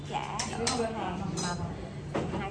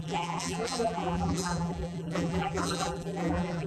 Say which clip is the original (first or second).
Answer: first